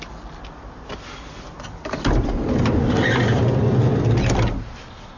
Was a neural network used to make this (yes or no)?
no